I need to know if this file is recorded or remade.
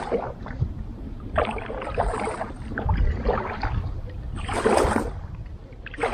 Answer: recorded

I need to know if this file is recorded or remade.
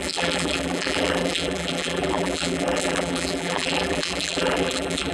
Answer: remade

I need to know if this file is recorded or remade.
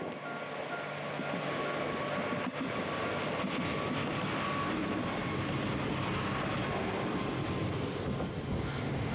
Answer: recorded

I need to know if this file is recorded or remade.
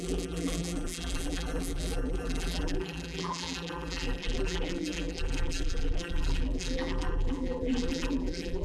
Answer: remade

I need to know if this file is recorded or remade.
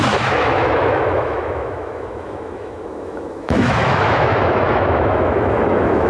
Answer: remade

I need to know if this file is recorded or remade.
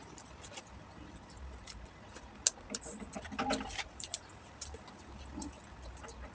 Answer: recorded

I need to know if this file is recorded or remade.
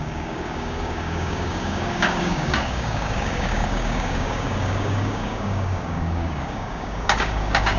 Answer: remade